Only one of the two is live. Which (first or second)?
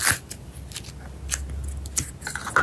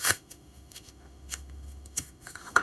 first